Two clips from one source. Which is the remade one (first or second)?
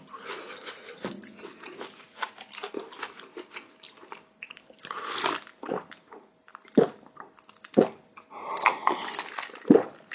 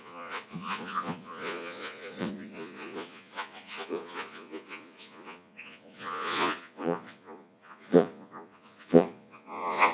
second